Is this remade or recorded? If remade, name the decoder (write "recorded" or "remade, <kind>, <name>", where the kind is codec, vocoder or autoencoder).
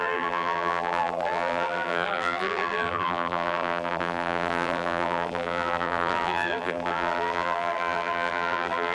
remade, vocoder, BigVGAN v2